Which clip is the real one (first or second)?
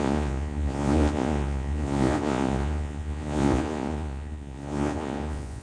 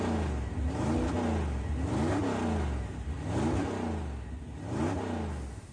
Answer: second